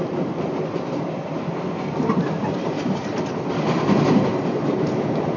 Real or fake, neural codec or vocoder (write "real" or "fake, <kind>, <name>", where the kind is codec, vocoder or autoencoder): real